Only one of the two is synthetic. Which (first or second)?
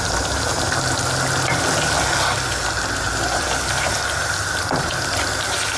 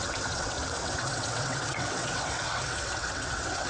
second